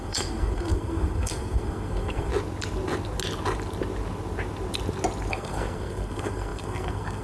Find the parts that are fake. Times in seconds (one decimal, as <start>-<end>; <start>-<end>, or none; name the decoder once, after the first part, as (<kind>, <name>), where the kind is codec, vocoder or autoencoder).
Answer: 0.0-2.3 (codec, SNAC); 5.3-7.2

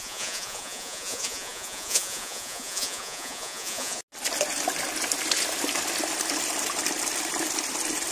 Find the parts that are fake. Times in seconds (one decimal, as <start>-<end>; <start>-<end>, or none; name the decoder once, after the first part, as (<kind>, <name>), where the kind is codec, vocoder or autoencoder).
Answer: 0.0-4.0 (vocoder, Vocos)

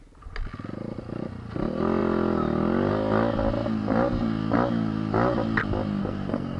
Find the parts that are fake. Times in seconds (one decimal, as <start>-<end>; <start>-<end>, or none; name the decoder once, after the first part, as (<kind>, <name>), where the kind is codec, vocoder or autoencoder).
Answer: 6.0-6.6 (codec, SNAC)

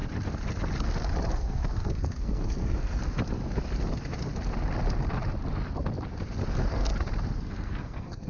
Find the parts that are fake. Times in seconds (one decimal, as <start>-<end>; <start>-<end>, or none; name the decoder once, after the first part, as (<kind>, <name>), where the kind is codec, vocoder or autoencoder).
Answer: 1.3-3.0 (codec, SNAC); 6.5-6.9; 7.4-8.3

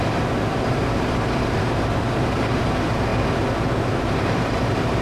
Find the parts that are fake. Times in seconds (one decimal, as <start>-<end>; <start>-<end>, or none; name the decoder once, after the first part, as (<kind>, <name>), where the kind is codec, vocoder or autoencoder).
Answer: 0.0-3.1 (vocoder, BigVGAN v2); 4.1-5.0

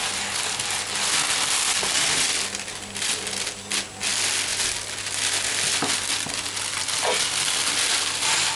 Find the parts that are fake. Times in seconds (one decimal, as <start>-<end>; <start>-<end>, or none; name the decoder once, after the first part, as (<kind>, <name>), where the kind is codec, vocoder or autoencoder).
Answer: none

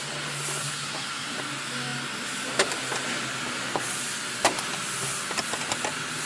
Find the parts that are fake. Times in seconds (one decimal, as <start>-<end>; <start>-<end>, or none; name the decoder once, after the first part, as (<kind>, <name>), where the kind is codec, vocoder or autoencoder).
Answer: 0.6-1.4 (codec, SNAC)